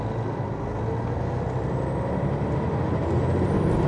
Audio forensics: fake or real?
real